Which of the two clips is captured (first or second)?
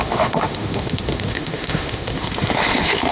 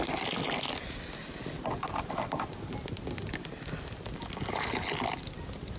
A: second